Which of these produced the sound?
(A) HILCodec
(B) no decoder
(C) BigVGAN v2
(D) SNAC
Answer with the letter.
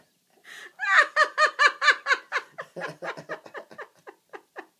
B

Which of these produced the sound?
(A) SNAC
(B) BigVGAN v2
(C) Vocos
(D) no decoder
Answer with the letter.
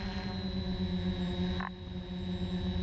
D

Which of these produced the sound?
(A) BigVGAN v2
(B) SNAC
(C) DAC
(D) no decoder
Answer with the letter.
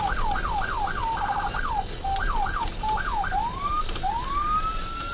D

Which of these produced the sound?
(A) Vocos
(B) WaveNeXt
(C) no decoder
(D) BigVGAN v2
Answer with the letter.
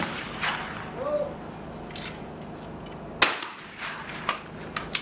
C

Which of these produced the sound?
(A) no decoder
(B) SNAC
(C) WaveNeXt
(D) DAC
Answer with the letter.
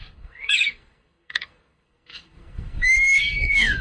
B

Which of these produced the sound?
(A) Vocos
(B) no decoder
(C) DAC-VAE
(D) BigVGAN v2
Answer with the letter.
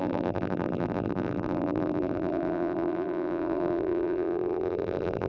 D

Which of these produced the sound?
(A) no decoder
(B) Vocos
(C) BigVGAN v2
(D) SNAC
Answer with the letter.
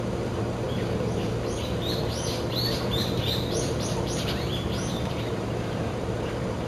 C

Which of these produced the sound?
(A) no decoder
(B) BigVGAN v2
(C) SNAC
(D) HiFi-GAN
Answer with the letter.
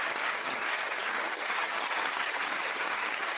D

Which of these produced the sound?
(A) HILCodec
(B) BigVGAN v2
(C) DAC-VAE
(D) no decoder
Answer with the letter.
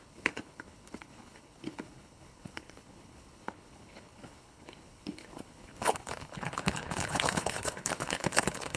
A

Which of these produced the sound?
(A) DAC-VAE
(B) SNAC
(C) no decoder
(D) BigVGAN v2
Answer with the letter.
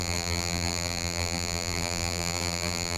D